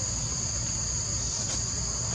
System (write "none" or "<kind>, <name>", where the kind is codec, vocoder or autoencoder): none